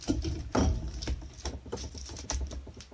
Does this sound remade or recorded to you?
recorded